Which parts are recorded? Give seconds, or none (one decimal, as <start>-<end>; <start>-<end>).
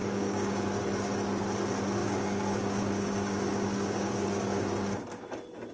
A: 0.6-2.0; 4.6-5.7